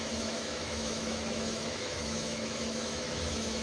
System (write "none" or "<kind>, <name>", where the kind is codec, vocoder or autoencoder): autoencoder, DAC-VAE